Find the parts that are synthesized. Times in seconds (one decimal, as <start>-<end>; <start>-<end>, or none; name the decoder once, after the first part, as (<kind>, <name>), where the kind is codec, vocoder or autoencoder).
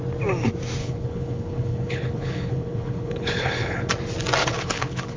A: 0.8-3.9 (codec, HILCodec); 4.4-5.2